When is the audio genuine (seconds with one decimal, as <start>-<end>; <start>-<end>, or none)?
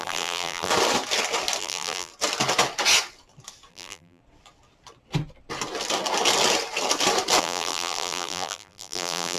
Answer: 0.7-1.6; 2.1-3.7; 4.2-7.4